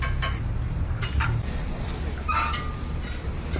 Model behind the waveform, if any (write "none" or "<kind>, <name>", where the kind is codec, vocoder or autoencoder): none